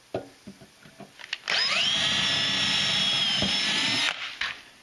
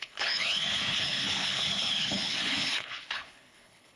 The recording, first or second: first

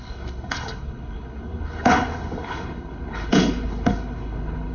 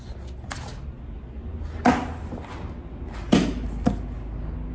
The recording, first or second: second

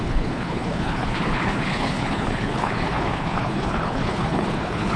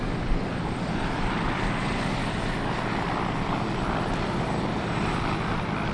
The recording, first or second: second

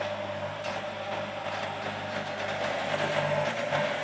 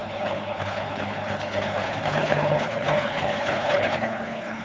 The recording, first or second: first